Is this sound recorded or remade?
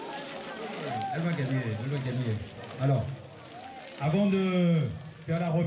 recorded